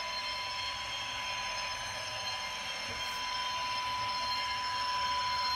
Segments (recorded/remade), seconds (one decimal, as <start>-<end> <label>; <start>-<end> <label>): 0.0-5.6 recorded